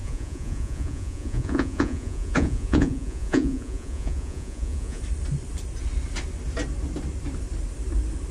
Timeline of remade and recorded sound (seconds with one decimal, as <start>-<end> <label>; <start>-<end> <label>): 0.0-5.0 remade; 5.0-8.3 recorded